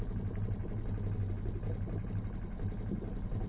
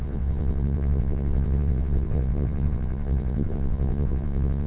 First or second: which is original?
first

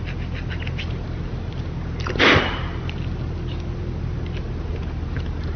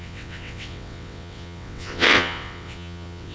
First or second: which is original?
first